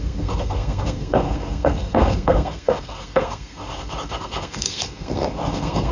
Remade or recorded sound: remade